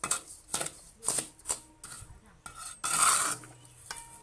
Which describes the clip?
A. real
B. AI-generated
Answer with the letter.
A